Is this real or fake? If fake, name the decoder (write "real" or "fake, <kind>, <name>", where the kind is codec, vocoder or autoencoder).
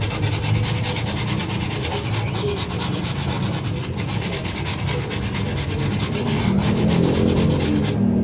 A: real